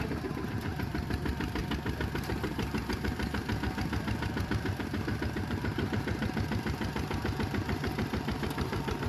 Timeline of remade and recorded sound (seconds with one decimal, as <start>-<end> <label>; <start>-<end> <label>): 0.0-1.6 remade; 1.6-2.3 recorded; 2.3-9.1 remade